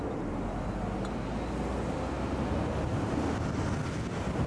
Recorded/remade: recorded